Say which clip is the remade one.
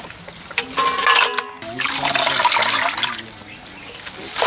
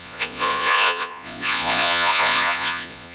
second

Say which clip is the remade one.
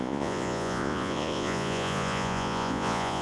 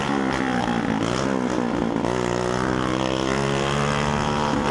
first